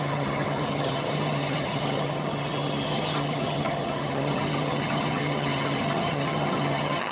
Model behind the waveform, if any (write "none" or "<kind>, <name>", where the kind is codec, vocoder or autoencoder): vocoder, HiFi-GAN